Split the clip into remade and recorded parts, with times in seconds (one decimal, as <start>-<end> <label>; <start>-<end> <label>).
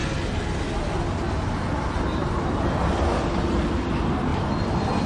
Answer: 0.0-5.1 recorded